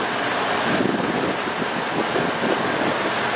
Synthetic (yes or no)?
no